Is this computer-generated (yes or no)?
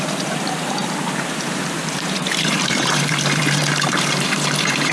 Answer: yes